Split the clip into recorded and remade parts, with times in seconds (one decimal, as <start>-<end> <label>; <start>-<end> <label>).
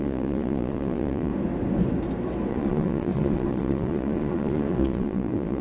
0.0-1.3 remade; 1.3-2.5 recorded; 2.5-5.6 remade